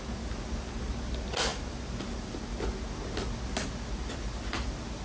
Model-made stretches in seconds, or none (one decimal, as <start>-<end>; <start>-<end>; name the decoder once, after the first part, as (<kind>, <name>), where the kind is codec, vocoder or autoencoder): none